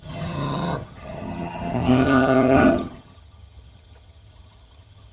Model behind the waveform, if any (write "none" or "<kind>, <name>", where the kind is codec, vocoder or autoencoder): vocoder, HiFi-GAN